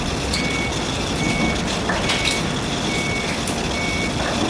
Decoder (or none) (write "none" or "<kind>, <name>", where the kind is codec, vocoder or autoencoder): none